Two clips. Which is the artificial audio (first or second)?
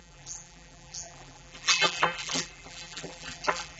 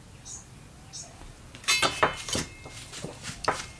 first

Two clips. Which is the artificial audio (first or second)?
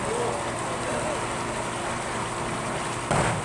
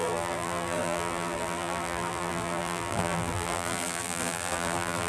second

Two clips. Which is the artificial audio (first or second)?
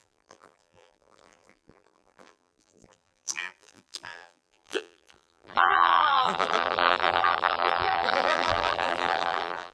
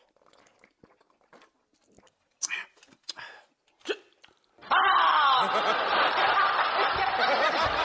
first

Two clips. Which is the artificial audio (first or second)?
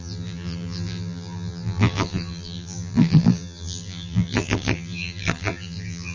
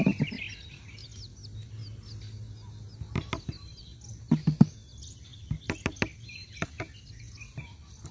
first